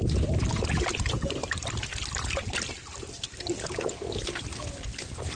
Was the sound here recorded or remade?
recorded